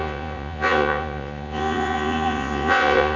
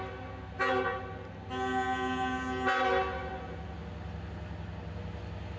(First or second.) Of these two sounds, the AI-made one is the first